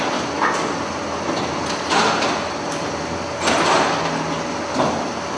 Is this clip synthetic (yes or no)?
no